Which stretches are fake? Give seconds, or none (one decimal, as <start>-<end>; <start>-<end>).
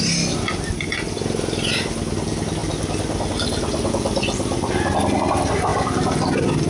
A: none